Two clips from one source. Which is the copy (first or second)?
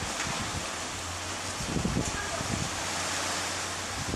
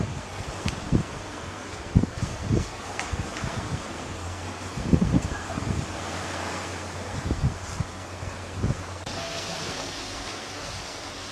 second